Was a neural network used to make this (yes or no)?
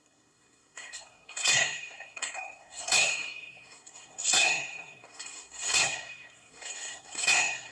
yes